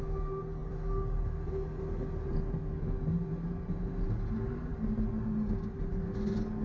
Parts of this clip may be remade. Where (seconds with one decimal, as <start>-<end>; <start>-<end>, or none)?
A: none